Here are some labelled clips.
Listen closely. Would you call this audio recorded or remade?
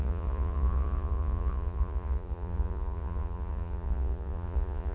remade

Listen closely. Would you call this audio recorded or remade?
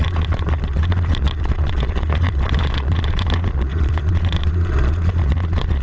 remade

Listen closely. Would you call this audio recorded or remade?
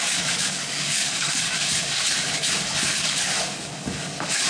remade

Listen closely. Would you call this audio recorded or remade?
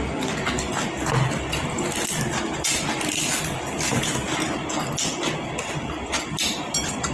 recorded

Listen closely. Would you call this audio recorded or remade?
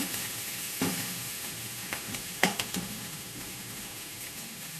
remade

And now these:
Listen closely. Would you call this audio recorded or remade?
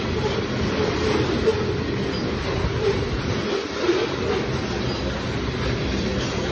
recorded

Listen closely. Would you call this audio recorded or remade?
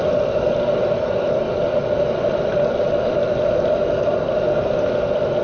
recorded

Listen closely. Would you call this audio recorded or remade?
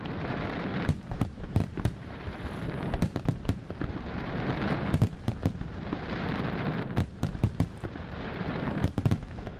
remade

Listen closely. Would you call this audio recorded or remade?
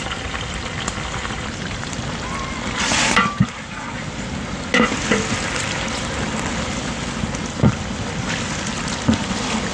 recorded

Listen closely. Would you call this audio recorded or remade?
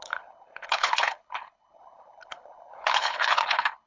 remade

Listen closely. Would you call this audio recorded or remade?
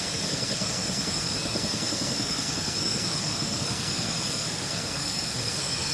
remade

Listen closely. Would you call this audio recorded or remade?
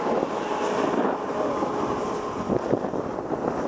recorded